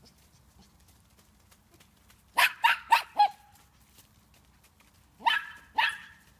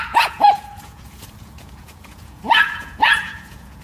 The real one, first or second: first